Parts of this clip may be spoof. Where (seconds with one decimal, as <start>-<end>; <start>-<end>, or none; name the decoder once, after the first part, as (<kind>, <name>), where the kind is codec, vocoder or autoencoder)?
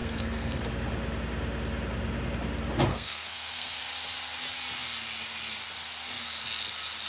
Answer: 0.0-0.6 (codec, SNAC); 2.9-3.8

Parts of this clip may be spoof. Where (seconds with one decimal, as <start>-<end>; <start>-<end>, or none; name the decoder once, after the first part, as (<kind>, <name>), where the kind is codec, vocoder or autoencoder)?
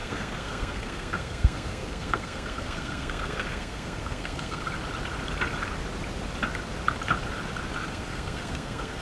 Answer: 0.0-4.6 (codec, SNAC); 7.9-9.0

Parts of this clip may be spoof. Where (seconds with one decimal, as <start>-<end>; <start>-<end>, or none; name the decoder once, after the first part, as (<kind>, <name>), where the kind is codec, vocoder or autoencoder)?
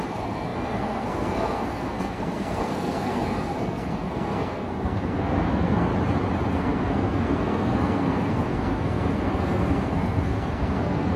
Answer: 0.0-5.9 (codec, SNAC); 6.5-11.2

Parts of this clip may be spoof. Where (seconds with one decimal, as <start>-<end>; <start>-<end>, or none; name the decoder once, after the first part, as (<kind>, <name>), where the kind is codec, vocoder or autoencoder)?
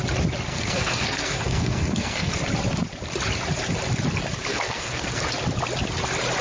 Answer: 0.5-2.3 (codec, SNAC); 4.5-5.2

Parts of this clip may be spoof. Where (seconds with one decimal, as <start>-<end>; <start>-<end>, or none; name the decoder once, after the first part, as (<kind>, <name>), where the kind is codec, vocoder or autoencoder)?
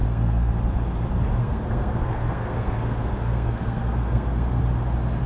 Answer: 0.0-0.5 (codec, SNAC); 1.4-4.6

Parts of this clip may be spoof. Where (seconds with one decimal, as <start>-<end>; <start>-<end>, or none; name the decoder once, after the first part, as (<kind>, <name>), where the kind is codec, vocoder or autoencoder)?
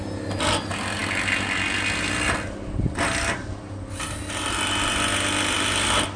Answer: none